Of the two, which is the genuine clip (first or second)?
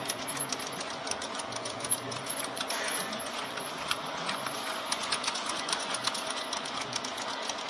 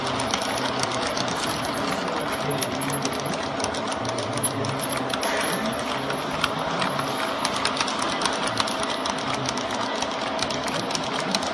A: second